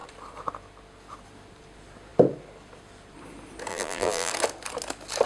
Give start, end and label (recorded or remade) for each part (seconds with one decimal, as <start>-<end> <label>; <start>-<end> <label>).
0.0-3.7 recorded; 3.7-4.3 remade; 4.3-5.3 recorded